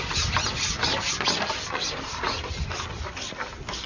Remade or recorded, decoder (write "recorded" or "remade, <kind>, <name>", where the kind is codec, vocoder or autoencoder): recorded